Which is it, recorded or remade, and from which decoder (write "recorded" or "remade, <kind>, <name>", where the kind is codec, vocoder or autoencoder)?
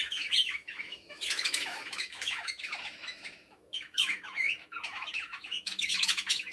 remade, autoencoder, DAC-VAE